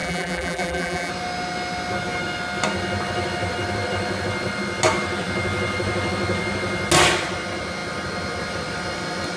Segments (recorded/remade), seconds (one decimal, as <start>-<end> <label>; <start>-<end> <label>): 0.0-1.1 remade; 1.1-9.4 recorded